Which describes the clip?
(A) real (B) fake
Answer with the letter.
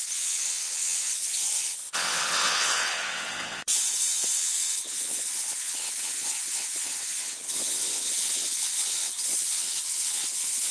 B